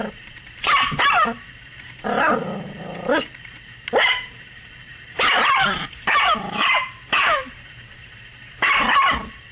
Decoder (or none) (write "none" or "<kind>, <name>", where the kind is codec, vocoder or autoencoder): vocoder, BigVGAN v2